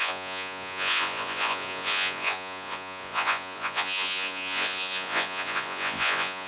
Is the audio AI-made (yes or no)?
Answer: yes